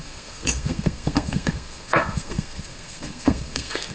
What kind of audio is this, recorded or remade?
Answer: remade